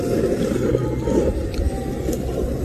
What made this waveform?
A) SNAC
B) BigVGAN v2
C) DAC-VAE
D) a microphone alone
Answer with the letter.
D